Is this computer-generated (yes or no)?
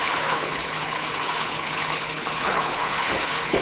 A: yes